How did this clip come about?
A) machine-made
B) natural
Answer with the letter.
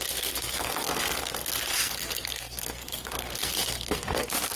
A